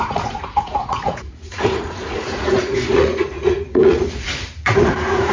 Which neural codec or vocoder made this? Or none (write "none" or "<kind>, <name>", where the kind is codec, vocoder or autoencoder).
vocoder, Vocos